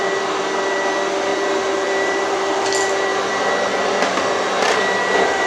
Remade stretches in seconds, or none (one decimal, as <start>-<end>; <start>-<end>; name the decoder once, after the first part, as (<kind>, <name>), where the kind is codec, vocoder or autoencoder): 1.3-2.4 (vocoder, BigVGAN v2)